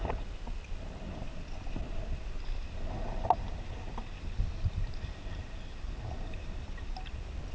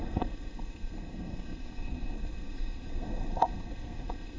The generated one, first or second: second